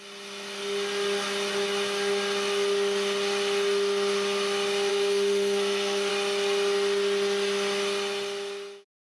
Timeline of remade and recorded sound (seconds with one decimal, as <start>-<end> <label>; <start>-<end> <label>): 0.0-4.9 recorded; 4.9-6.1 remade; 6.1-9.0 recorded